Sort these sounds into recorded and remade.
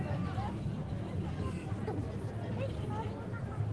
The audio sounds recorded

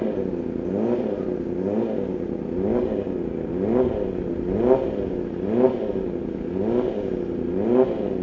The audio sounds recorded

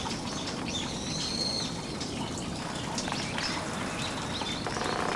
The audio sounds recorded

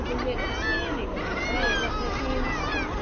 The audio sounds recorded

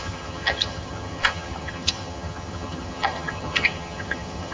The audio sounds remade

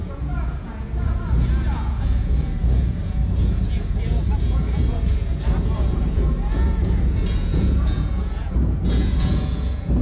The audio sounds remade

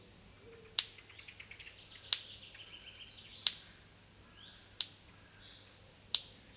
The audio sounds recorded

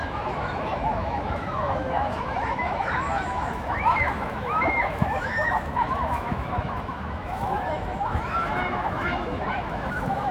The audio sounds remade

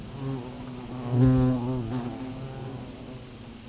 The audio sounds recorded